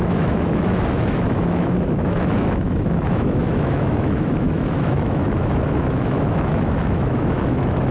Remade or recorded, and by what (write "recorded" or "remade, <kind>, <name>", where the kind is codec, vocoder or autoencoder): remade, autoencoder, DAC-VAE